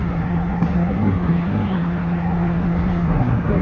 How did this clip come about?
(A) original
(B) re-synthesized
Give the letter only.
B